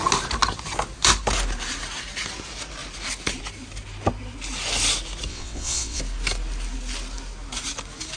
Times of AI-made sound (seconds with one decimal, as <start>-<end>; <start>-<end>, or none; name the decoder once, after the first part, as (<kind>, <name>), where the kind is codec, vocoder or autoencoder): 5.3-6.0 (vocoder, WaveNeXt)